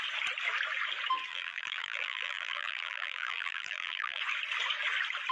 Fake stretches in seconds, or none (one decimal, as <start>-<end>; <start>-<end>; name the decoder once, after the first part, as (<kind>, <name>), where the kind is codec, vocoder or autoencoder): 1.3-4.2 (vocoder, BigVGAN v2)